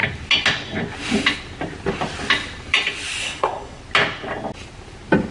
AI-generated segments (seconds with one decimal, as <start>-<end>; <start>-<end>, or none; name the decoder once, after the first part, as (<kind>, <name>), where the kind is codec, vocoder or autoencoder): 3.2-3.8 (codec, SNAC)